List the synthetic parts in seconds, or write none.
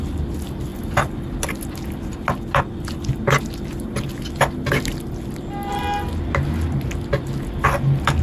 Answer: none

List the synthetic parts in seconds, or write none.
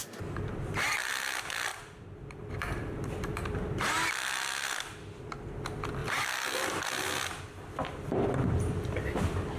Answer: 0.0-1.1 (vocoder, BigVGAN v2); 1.7-2.5; 6.0-6.8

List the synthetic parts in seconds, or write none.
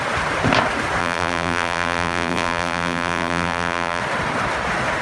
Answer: 1.0-4.0 (vocoder, BigVGAN v2)